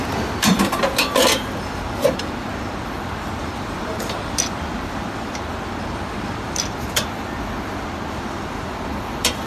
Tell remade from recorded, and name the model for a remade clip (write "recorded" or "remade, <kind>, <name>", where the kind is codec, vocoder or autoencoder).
remade, vocoder, BigVGAN v2